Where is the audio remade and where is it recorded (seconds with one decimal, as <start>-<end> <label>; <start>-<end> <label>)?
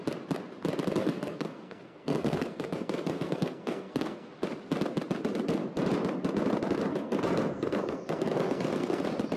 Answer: 0.0-1.0 recorded; 1.0-4.3 remade; 4.3-6.9 recorded; 6.9-9.0 remade; 9.0-9.4 recorded